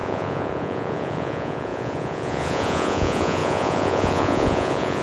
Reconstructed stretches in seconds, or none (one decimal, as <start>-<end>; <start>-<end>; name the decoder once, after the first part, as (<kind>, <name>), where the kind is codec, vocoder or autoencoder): 0.0-5.0 (vocoder, Vocos)